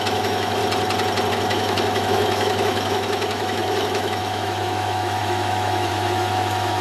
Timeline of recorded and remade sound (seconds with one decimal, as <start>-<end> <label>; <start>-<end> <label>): 0.0-0.6 remade; 0.6-1.3 recorded; 1.3-6.8 remade